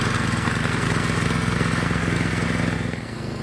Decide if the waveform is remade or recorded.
remade